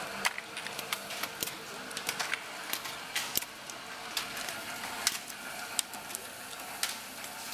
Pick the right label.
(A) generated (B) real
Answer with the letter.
B